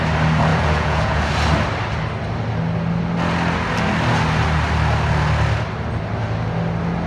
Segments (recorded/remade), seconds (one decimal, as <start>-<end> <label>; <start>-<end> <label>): 0.0-0.5 recorded; 0.5-1.3 remade; 1.3-7.1 recorded